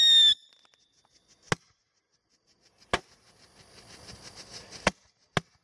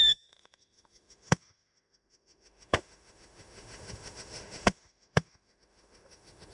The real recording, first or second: first